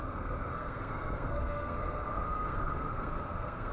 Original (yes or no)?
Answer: no